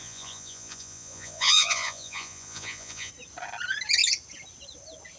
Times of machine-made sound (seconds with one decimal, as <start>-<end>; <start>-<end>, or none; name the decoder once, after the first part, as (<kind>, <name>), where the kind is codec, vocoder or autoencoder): 0.0-3.1 (vocoder, Vocos)